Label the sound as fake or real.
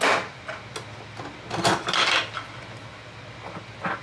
real